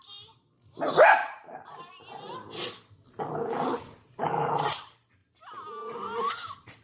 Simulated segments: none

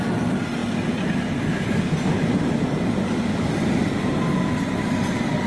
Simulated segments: none

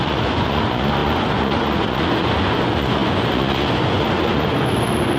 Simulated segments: 0.0-5.2 (vocoder, Vocos)

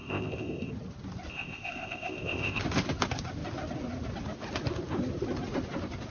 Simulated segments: 0.0-0.7 (codec, ZipCodec); 1.3-2.6

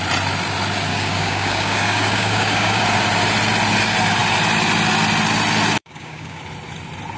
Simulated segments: 0.9-2.8 (codec, DAC); 5.8-6.4